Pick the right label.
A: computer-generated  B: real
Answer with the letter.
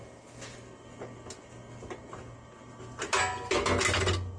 B